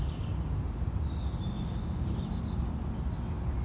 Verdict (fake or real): real